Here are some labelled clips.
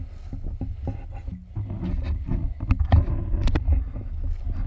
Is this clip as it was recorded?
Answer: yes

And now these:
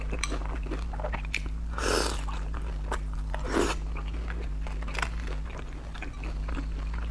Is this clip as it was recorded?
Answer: yes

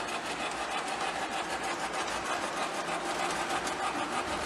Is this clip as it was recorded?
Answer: yes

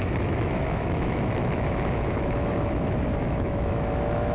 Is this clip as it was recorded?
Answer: no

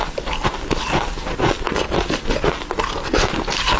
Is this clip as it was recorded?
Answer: yes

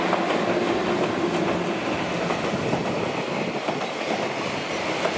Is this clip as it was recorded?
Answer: yes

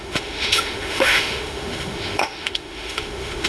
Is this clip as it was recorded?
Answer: no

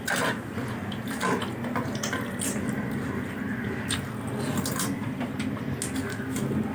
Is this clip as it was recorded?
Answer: yes